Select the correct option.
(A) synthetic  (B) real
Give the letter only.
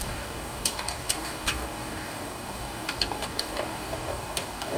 A